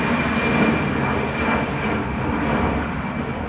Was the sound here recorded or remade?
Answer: recorded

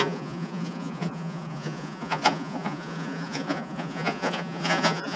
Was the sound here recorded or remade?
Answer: remade